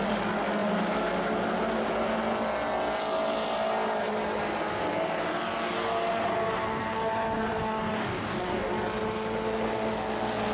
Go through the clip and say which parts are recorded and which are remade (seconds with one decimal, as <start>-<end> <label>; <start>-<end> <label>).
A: 0.0-7.9 recorded; 7.9-8.7 remade; 8.7-10.5 recorded